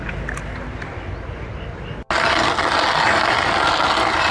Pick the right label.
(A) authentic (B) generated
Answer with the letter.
A